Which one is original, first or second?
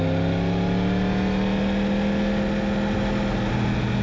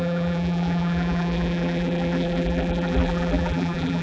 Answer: first